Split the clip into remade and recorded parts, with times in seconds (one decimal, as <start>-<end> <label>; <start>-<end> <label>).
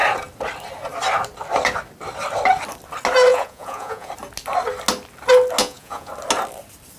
0.0-3.3 recorded; 3.3-4.1 remade; 4.1-5.6 recorded; 5.6-6.1 remade; 6.1-7.0 recorded